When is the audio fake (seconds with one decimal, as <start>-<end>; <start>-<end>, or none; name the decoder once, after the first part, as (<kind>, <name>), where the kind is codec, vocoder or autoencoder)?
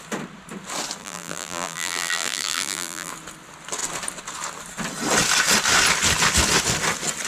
1.0-3.1 (vocoder, BigVGAN v2)